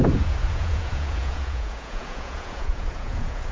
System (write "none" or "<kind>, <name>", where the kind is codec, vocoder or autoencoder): vocoder, Vocos